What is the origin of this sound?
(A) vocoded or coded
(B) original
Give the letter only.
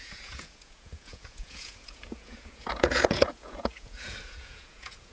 A